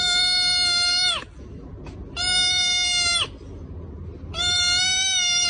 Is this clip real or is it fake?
real